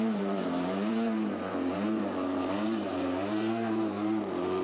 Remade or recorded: remade